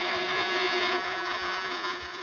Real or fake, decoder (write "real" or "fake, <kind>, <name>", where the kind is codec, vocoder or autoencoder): fake, vocoder, Vocos